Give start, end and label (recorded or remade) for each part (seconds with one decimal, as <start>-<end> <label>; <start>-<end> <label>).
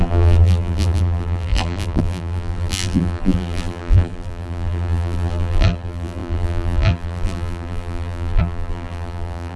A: 0.0-9.6 remade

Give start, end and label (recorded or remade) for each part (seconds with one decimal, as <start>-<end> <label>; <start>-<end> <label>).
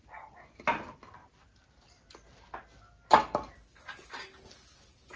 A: 0.0-5.2 recorded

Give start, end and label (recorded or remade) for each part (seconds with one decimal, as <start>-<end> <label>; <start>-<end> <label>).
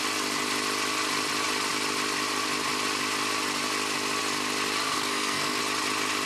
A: 0.0-4.9 recorded; 4.9-5.6 remade; 5.6-6.3 recorded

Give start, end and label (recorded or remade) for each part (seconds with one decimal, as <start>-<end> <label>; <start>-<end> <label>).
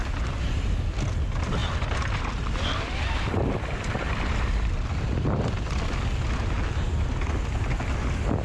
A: 0.0-8.4 recorded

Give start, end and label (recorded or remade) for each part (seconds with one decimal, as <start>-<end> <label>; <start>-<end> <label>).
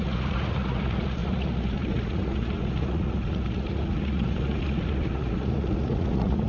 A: 0.0-6.5 remade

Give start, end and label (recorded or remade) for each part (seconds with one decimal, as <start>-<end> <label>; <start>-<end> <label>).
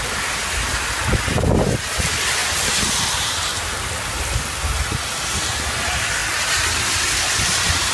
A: 0.0-7.9 recorded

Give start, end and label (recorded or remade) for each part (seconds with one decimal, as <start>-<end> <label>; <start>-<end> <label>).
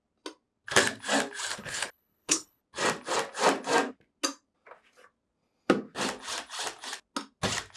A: 0.0-1.5 recorded; 1.5-2.6 remade; 2.6-7.8 recorded